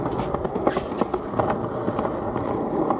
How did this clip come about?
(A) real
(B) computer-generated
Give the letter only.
A